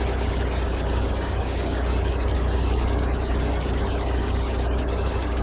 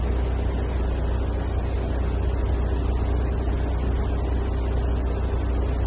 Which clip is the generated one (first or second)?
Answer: first